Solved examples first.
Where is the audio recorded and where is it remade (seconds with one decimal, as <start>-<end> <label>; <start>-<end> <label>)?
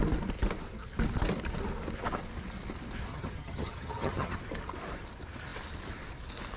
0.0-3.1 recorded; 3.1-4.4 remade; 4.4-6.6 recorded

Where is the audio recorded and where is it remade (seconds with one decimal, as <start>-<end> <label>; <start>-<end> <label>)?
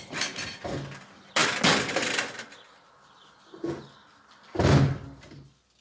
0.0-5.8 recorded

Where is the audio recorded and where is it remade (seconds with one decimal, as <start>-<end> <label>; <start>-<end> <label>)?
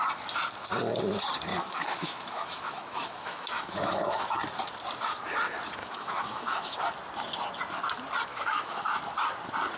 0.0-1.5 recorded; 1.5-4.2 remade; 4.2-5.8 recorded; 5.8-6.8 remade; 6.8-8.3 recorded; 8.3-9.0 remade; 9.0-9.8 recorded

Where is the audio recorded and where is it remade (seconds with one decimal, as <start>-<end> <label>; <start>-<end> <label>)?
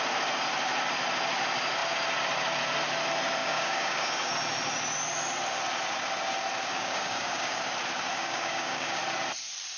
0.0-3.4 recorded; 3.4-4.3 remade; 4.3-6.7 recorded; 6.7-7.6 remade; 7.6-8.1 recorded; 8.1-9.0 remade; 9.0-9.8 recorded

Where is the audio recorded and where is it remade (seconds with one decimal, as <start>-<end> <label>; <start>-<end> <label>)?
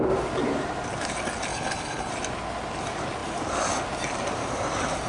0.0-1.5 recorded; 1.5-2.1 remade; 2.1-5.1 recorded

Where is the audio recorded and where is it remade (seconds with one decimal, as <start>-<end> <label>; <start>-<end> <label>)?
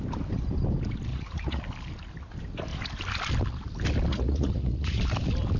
0.0-1.1 recorded; 1.1-1.6 remade; 1.6-4.1 recorded; 4.1-5.0 remade; 5.0-5.6 recorded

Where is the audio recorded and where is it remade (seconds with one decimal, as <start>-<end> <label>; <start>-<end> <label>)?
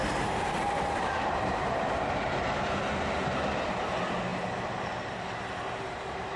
0.0-6.4 recorded